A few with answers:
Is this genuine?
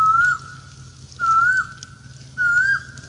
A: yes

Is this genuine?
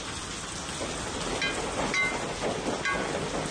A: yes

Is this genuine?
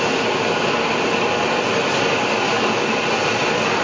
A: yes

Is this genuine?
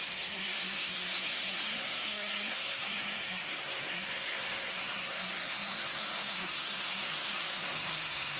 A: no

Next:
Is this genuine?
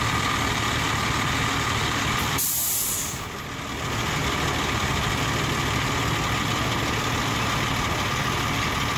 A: yes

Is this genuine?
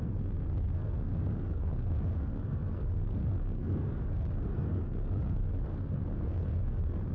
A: no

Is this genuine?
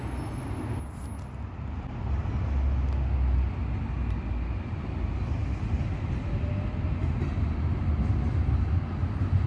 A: yes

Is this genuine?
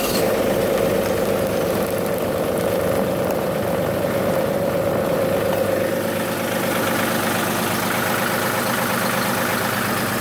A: yes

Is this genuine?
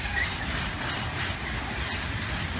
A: yes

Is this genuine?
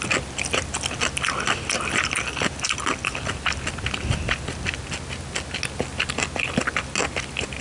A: yes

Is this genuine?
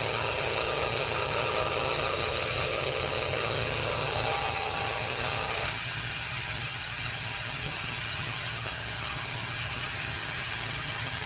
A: no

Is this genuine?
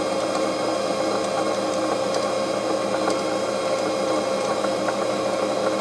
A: no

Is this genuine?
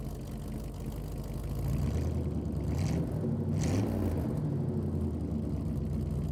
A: yes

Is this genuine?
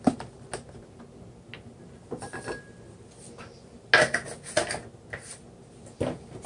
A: yes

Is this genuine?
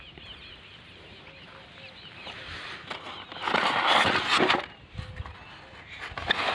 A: yes